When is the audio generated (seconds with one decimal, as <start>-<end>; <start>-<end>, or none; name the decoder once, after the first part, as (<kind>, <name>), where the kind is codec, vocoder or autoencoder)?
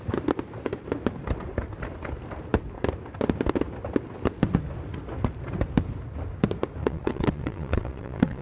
6.8-8.4 (vocoder, WaveNeXt)